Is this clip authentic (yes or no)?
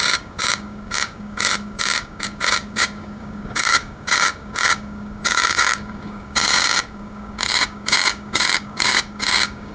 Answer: no